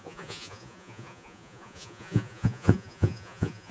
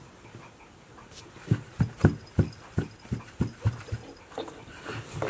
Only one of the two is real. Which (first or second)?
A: second